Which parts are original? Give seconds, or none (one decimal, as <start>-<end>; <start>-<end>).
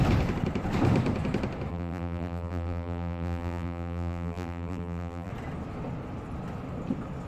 0.0-1.7; 5.3-7.3